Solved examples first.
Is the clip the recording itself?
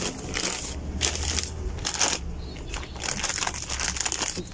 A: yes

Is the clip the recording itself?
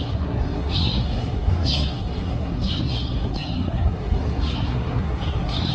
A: no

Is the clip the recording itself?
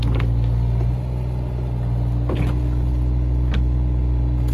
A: yes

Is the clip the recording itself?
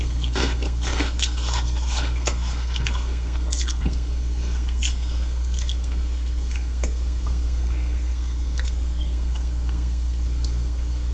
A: no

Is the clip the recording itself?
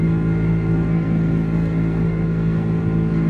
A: no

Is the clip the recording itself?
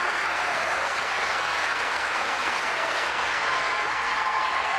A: no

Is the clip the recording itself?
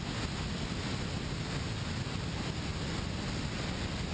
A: yes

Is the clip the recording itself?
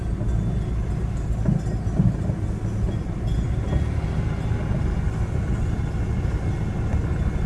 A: yes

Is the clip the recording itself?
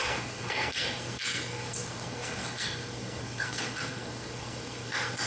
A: no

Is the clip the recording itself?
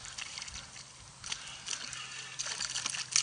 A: yes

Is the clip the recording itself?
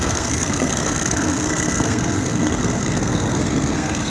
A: no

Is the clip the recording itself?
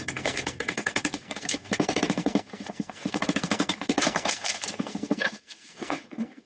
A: no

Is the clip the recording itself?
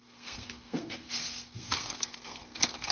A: no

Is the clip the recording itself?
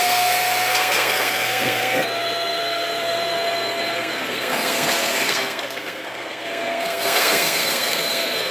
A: no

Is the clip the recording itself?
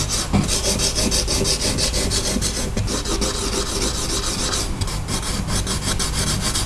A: yes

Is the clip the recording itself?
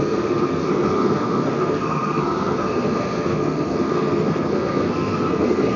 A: no